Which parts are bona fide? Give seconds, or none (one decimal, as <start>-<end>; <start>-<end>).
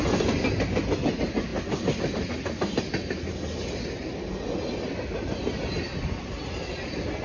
0.0-7.2